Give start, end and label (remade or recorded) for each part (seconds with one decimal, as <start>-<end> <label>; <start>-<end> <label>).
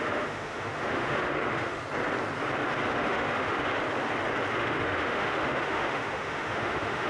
0.0-1.8 remade; 1.8-2.9 recorded; 2.9-3.7 remade; 3.7-4.5 recorded; 4.5-7.1 remade